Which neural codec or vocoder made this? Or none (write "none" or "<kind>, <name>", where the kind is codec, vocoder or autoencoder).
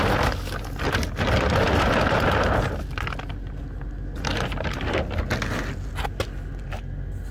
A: none